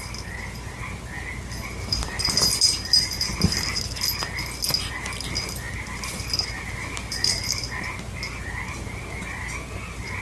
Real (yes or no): yes